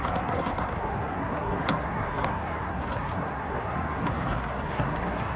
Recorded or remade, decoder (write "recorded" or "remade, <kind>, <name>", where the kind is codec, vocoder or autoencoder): remade, codec, SNAC